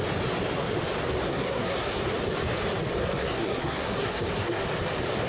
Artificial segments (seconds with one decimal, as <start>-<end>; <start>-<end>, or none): 1.3-2.0; 3.0-4.6